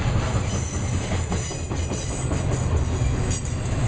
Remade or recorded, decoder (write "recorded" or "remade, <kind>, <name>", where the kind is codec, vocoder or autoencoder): recorded